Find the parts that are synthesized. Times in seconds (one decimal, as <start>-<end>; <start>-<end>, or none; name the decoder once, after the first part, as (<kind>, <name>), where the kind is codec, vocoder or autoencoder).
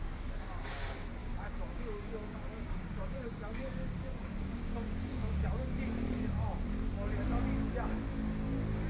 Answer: 1.2-5.5 (codec, DAC)